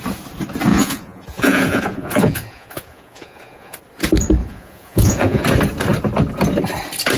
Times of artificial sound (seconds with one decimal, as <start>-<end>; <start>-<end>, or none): 0.7-3.8; 4.4-5.4